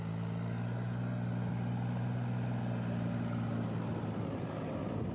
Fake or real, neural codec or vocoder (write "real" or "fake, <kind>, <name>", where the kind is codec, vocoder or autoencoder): real